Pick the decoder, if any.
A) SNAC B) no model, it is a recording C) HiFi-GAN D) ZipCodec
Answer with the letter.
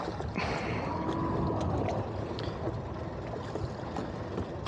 B